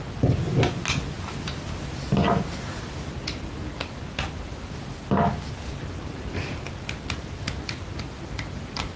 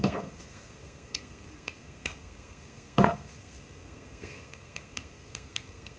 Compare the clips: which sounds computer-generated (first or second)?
second